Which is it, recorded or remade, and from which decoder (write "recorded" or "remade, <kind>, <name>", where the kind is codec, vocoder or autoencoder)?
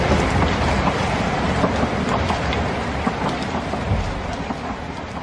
recorded